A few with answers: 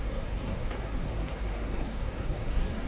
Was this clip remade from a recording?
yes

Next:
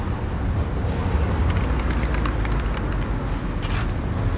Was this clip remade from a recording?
no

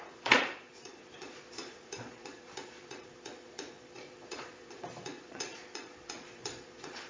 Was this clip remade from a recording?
yes